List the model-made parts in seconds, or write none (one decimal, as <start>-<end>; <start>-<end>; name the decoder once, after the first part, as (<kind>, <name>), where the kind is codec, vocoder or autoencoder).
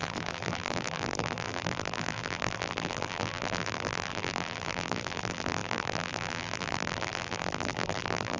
0.0-8.4 (vocoder, BigVGAN v2)